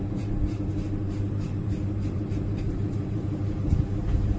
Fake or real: fake